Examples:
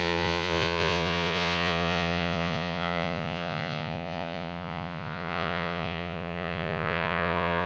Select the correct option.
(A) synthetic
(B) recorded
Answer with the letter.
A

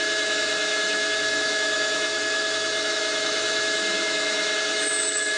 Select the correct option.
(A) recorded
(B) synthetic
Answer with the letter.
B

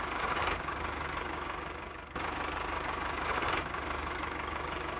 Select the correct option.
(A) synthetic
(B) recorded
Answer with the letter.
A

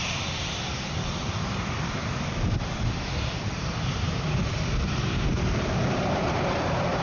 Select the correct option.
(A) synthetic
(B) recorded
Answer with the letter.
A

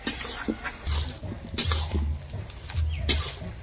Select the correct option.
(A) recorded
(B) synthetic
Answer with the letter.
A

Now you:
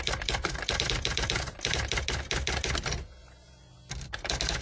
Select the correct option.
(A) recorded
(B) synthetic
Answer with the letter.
A